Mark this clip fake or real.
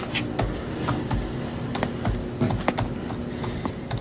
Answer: real